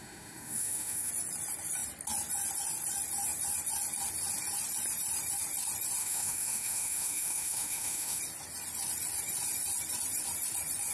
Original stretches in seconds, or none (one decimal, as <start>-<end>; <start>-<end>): 1.1-6.0; 8.2-10.9